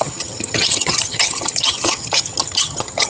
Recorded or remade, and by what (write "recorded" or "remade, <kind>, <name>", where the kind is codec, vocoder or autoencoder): remade, vocoder, HiFi-GAN